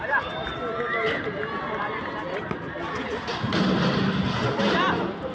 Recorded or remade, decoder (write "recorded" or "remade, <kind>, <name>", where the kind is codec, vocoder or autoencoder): recorded